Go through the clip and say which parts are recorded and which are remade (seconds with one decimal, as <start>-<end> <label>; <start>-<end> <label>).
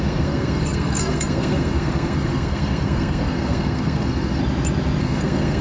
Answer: 0.0-4.4 remade; 4.4-5.0 recorded; 5.0-5.6 remade